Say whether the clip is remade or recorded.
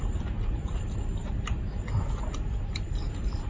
recorded